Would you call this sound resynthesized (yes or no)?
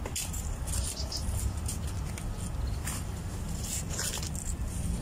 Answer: no